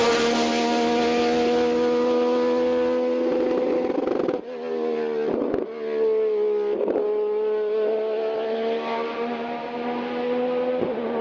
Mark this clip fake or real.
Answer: real